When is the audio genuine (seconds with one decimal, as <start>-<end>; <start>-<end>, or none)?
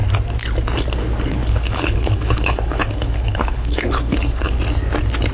0.0-1.4; 4.6-5.3